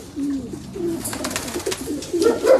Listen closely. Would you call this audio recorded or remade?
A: recorded